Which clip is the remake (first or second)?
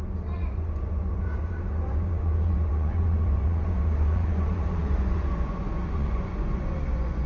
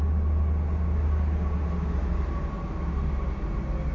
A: first